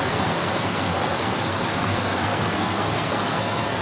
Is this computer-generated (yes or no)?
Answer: yes